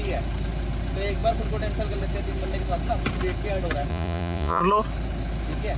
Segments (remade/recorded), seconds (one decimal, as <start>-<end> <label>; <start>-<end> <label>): 0.0-3.9 recorded; 3.9-4.6 remade; 4.6-5.8 recorded